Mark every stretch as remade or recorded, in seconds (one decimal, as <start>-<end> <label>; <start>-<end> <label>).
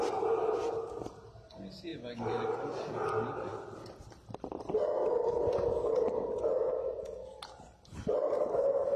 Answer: 0.0-9.0 recorded